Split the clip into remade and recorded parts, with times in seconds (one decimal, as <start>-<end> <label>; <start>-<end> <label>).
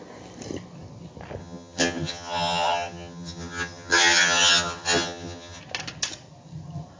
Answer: 0.0-1.4 recorded; 1.4-5.6 remade; 5.6-7.0 recorded